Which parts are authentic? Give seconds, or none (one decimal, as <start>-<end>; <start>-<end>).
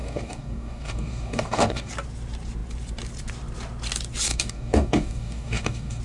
1.9-4.3